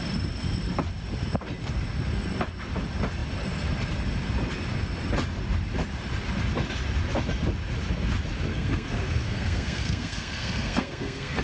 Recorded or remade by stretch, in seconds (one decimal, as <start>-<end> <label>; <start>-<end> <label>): 0.0-8.5 recorded; 8.5-11.4 remade